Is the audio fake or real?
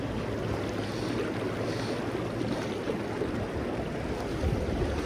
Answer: real